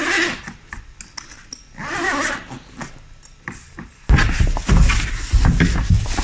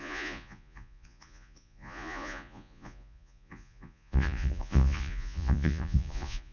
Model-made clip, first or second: second